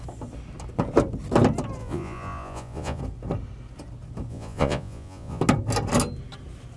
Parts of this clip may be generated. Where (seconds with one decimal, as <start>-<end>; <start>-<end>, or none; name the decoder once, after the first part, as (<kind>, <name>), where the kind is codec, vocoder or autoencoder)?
1.8-3.0 (vocoder, Vocos); 4.3-5.4